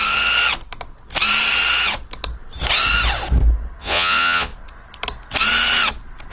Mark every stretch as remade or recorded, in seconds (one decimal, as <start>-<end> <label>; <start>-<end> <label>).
0.0-3.8 recorded; 3.8-4.5 remade; 4.5-6.3 recorded